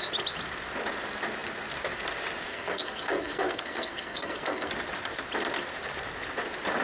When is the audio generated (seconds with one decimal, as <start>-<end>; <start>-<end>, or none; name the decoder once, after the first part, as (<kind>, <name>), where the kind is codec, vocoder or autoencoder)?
2.5-4.7 (codec, SNAC)